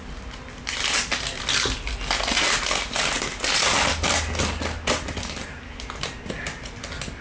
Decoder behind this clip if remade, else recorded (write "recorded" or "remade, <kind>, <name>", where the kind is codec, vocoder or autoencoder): recorded